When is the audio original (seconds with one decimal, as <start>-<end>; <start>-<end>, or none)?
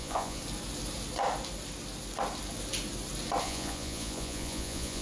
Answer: 0.4-3.4